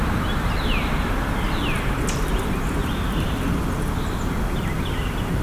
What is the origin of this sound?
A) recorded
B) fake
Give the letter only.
A